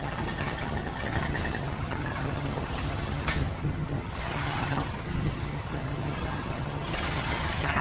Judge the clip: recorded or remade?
remade